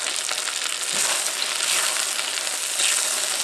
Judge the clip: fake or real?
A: real